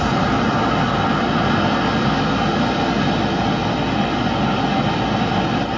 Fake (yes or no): no